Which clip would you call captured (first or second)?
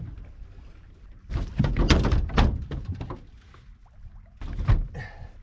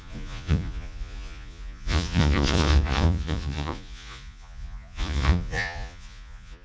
first